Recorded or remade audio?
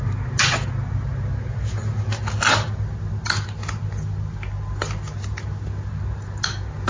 recorded